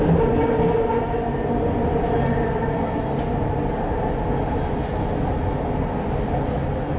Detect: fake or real real